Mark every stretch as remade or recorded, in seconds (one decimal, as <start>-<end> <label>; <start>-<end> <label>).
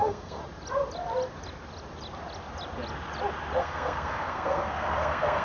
0.0-0.4 remade; 0.4-3.6 recorded; 3.6-5.4 remade